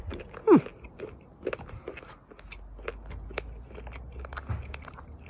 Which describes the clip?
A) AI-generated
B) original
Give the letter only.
B